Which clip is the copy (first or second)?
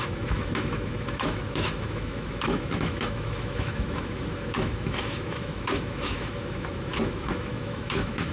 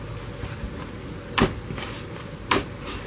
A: first